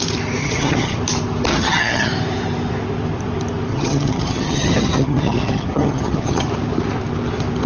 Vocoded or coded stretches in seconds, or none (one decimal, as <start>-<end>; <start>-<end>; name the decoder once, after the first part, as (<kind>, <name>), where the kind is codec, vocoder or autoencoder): 0.4-1.0 (vocoder, HiFi-GAN); 1.5-2.1; 3.7-6.5